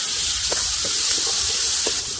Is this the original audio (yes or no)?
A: no